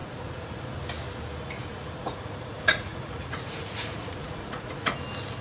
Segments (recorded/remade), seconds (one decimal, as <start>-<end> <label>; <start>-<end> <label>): 0.0-0.7 remade; 0.7-1.7 recorded; 1.7-4.9 remade; 4.9-5.4 recorded